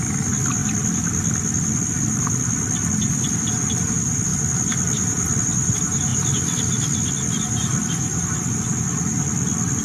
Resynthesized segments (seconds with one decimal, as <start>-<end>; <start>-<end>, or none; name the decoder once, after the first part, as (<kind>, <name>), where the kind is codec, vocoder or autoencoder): none